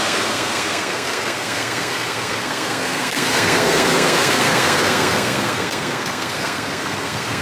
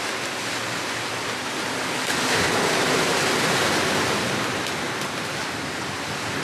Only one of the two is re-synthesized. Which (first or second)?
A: first